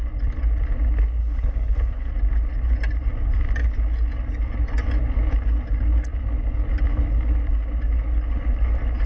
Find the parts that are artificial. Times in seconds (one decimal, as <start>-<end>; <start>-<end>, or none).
1.2-2.1